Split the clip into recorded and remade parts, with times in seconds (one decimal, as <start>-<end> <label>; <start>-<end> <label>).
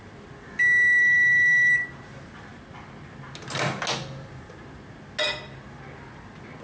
0.0-1.0 recorded; 1.0-1.7 remade; 1.7-6.6 recorded